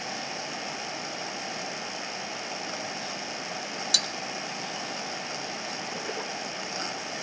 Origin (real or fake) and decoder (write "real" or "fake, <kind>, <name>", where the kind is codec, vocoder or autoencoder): real